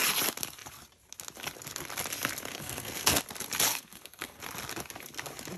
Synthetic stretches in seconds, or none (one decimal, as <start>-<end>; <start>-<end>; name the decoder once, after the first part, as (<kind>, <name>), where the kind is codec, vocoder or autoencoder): 2.5-3.2 (codec, SNAC); 3.7-4.4